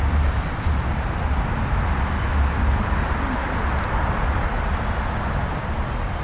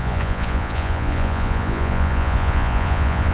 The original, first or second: first